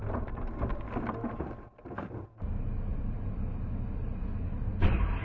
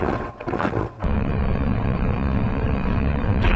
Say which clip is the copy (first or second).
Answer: second